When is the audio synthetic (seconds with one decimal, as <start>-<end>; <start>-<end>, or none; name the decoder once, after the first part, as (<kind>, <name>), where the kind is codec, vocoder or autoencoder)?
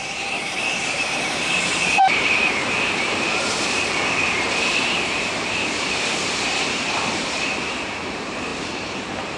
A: 0.0-9.4 (vocoder, BigVGAN v2)